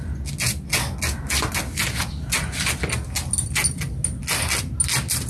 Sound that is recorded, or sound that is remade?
recorded